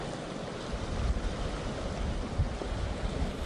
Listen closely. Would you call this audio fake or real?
real